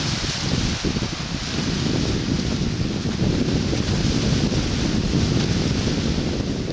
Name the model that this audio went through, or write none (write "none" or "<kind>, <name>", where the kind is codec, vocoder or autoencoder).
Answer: none